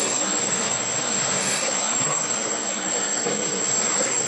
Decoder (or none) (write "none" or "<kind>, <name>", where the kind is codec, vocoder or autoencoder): codec, SNAC